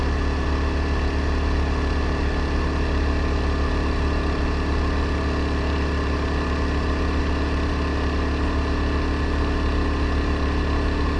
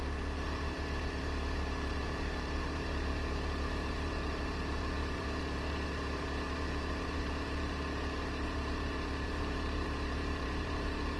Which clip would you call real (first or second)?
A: first